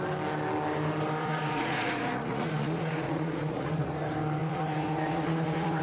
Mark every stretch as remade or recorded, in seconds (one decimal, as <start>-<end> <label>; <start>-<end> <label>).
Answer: 0.0-1.2 recorded; 1.2-3.9 remade; 3.9-4.4 recorded; 4.4-5.8 remade